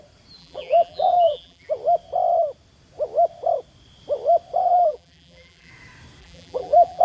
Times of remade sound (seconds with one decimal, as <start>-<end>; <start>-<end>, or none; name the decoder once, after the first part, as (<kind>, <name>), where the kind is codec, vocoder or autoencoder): 0.4-1.7 (vocoder, BigVGAN v2); 4.6-5.7; 6.2-7.0